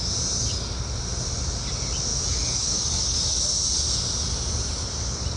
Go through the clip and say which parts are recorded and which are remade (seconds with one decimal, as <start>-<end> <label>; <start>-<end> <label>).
0.0-2.1 recorded; 2.1-3.4 remade; 3.4-5.4 recorded